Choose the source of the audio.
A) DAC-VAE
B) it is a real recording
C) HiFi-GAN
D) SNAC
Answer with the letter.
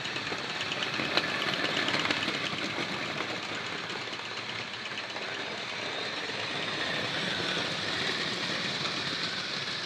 B